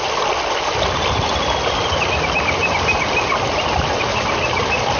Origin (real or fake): real